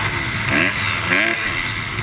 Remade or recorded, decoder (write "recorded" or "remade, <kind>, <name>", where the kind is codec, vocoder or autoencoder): recorded